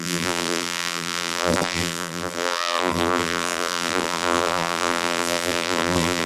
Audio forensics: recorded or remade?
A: remade